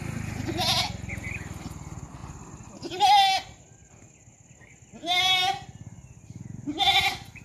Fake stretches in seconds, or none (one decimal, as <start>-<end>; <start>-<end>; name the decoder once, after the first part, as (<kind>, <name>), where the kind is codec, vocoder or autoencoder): none